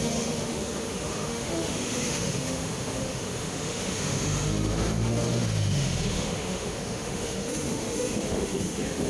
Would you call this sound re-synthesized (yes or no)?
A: yes